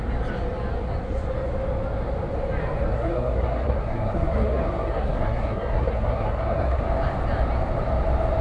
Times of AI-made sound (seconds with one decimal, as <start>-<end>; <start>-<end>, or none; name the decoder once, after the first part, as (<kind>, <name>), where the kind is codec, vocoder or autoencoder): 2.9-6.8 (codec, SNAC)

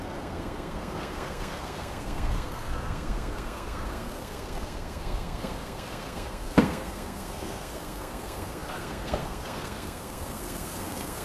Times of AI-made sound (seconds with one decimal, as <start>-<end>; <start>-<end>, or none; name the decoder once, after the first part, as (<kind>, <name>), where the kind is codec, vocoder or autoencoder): 0.0-11.2 (codec, SNAC)

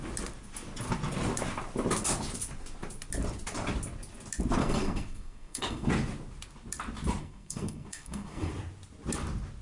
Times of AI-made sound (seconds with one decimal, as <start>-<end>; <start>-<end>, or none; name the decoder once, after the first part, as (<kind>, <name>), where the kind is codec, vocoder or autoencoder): 4.6-5.9 (codec, SNAC); 7.2-8.5